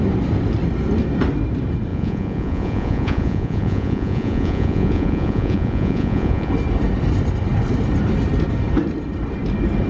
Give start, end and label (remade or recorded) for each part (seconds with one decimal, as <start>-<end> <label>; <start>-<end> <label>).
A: 0.0-1.9 recorded; 1.9-6.5 remade; 6.5-9.9 recorded